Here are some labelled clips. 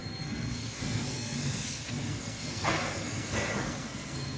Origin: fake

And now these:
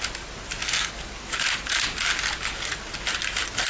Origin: real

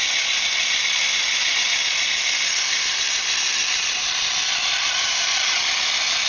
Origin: real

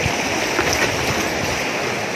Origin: real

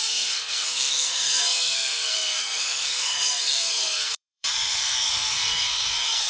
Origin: fake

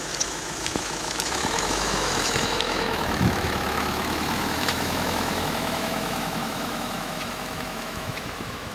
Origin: fake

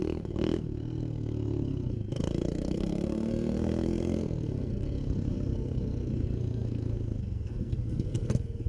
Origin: fake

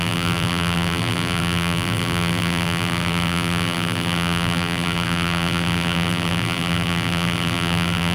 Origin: fake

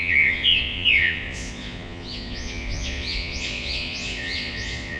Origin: fake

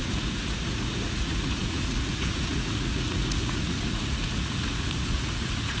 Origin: fake